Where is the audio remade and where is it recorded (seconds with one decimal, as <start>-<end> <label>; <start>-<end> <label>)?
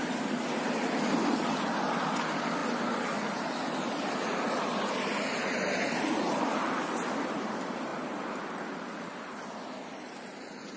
0.0-10.8 recorded